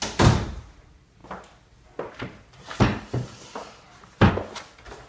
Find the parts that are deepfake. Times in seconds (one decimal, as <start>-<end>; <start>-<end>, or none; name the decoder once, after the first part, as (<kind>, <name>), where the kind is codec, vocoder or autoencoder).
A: none